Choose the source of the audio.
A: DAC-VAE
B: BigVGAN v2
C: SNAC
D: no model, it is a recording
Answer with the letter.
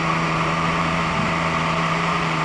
B